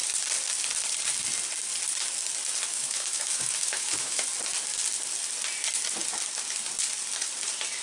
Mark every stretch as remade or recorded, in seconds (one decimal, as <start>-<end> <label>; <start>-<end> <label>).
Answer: 0.0-2.7 recorded; 2.7-4.2 remade; 4.2-7.8 recorded